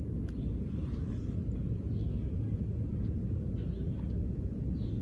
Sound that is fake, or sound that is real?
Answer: real